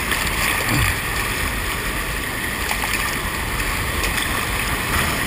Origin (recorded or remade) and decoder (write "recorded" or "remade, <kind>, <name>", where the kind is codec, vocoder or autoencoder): recorded